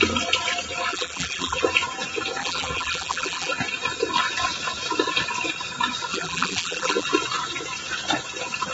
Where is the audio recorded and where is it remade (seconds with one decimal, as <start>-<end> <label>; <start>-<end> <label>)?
0.0-0.9 recorded; 0.9-1.6 remade; 1.6-2.4 recorded; 2.4-3.5 remade; 3.5-6.1 recorded; 6.1-7.1 remade; 7.1-8.7 recorded